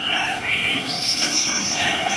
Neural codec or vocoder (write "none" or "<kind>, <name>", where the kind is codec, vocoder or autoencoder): codec, SNAC